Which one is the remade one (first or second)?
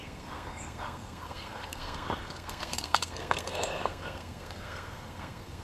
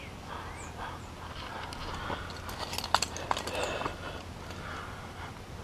first